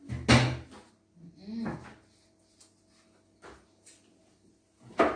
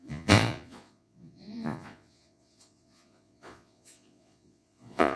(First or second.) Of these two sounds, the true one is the first